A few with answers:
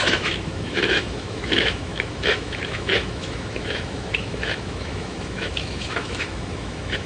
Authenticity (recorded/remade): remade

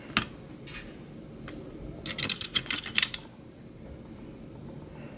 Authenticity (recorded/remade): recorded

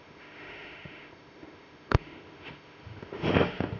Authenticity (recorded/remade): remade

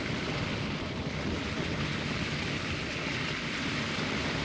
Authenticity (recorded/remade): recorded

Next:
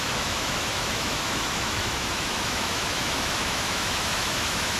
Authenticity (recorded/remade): remade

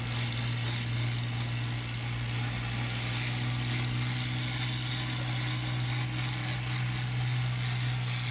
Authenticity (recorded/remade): recorded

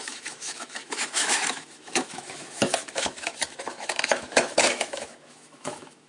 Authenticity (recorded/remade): remade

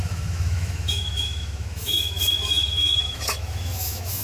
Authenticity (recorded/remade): remade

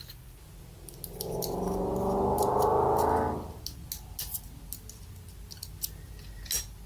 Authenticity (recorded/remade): recorded